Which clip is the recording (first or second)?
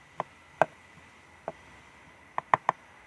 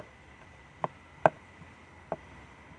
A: first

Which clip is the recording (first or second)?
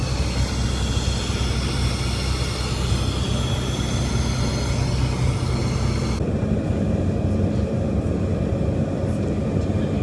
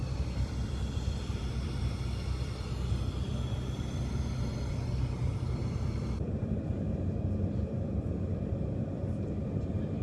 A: first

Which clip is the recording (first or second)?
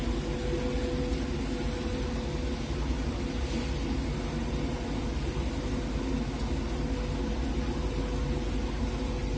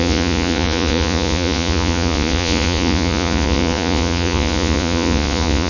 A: first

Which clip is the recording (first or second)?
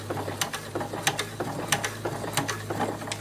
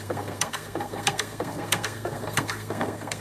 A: first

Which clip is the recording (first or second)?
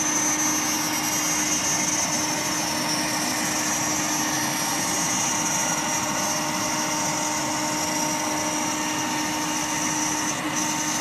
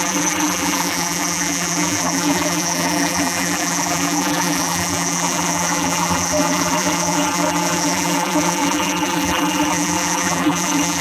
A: first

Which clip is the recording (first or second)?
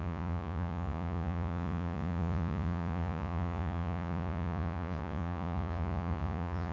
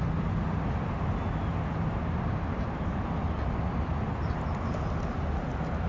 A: second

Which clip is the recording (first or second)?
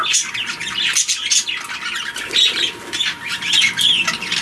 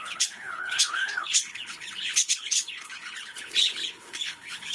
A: first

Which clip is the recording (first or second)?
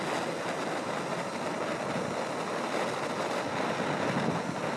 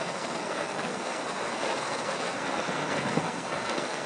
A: first